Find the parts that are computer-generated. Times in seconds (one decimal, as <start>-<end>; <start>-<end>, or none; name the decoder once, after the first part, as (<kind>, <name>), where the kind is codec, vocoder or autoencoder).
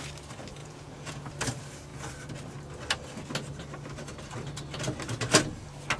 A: 0.6-1.3 (vocoder, Vocos)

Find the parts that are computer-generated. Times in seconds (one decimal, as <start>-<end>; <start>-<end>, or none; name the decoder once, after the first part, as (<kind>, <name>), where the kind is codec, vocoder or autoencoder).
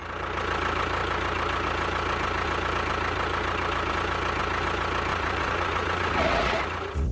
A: 5.1-7.1 (vocoder, Vocos)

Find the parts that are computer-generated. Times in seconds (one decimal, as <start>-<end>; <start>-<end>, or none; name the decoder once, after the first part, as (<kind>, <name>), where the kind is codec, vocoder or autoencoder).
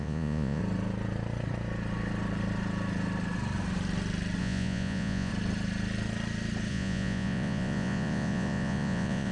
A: 0.0-0.6 (vocoder, Vocos); 4.4-5.3; 6.7-9.3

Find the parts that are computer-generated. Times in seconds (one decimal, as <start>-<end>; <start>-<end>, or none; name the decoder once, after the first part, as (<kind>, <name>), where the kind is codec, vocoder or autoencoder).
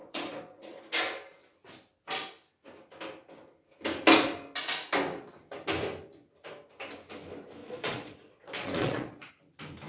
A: 0.0-0.8 (vocoder, Vocos); 7.6-9.3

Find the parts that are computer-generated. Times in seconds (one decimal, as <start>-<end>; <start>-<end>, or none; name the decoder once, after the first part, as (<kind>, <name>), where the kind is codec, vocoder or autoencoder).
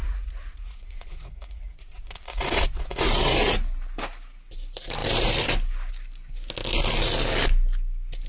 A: 0.0-3.1 (vocoder, Vocos)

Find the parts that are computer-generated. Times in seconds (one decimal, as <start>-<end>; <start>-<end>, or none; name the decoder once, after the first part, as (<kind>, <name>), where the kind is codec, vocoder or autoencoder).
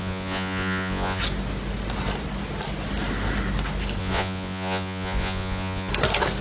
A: 0.0-1.2 (vocoder, Vocos); 4.0-5.9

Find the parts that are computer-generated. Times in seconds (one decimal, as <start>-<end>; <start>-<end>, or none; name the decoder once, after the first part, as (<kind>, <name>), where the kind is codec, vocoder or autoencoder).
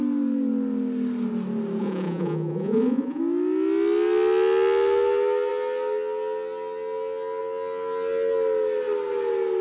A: 1.8-3.2 (vocoder, Vocos)